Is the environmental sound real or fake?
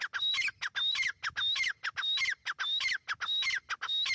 real